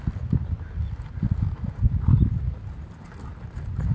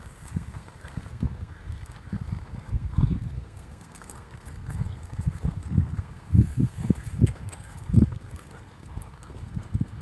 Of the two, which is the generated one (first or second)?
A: second